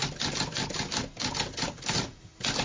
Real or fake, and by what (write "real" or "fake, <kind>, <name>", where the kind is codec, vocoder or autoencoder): real